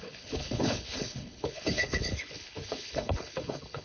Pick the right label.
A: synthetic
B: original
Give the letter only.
A